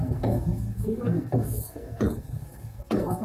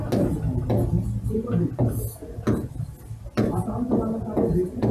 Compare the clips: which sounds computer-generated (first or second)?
first